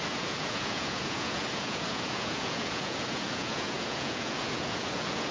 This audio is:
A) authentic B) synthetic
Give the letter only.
B